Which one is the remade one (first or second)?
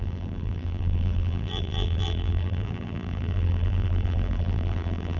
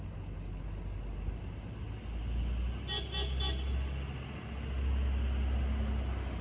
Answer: first